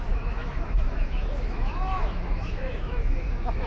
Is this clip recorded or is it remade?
remade